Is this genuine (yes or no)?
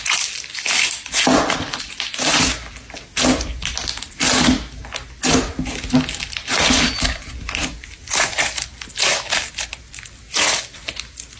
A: yes